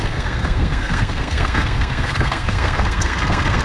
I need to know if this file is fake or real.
fake